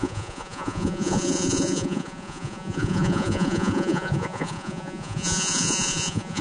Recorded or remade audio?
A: remade